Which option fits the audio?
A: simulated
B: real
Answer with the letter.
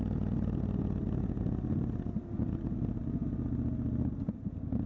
B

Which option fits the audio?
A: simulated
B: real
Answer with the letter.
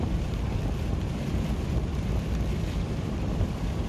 A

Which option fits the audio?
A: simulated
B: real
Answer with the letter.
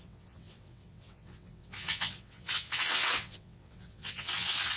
A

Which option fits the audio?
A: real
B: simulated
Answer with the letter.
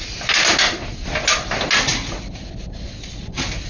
A